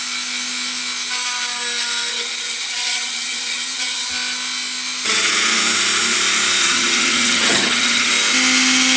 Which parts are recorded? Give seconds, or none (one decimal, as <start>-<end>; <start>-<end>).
0.0-2.1; 4.1-6.6; 8.1-9.0